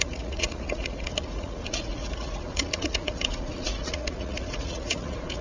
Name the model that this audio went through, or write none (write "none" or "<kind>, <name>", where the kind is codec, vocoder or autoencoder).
vocoder, Vocos